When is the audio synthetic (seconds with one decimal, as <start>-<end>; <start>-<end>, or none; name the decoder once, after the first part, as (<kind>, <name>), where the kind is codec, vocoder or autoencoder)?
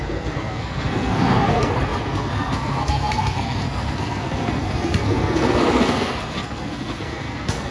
0.0-7.7 (codec, SNAC)